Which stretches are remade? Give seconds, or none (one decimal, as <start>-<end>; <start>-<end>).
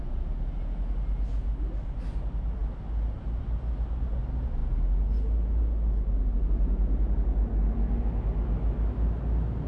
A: none